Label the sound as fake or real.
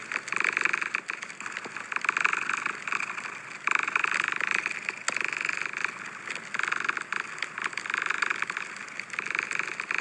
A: real